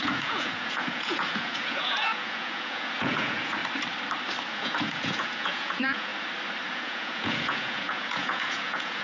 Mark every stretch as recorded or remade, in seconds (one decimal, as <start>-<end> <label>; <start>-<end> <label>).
0.0-3.6 remade; 3.6-4.5 recorded; 4.5-6.1 remade; 6.1-6.7 recorded; 6.7-9.0 remade